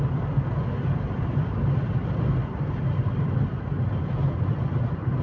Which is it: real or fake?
real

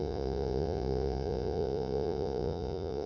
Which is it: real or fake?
fake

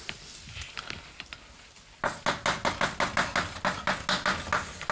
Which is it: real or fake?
real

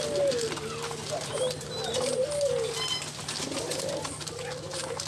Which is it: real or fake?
real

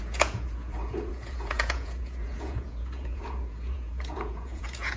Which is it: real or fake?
fake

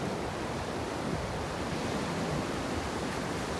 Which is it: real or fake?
real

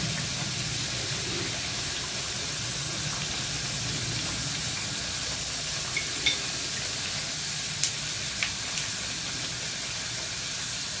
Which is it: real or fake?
real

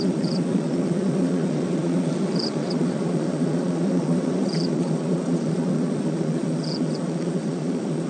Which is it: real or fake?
fake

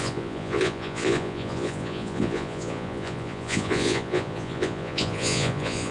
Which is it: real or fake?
fake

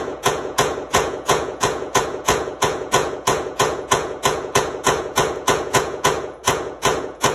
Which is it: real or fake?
fake